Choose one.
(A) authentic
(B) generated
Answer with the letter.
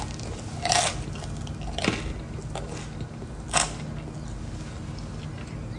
A